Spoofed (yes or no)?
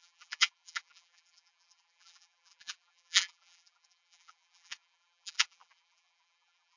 yes